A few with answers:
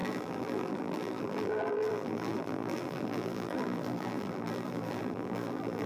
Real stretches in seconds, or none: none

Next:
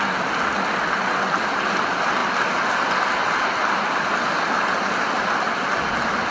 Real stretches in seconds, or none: 0.0-6.3

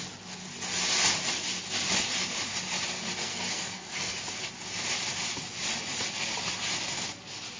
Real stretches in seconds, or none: 0.0-3.2; 4.2-7.6

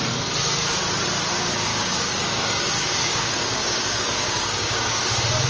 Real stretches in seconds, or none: 0.0-1.7; 5.0-5.5

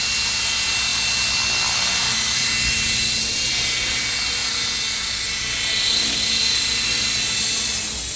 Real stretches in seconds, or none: 0.0-8.2

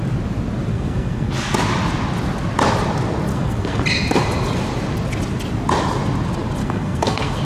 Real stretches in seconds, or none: 0.0-0.7; 1.3-3.3; 3.8-6.6